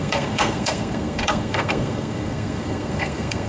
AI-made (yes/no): yes